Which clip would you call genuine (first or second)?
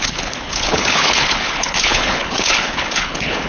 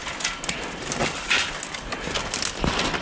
second